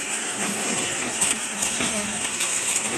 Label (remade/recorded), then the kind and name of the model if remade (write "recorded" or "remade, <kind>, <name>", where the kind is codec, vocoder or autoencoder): remade, codec, SNAC